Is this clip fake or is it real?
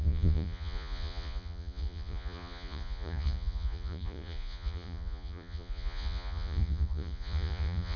fake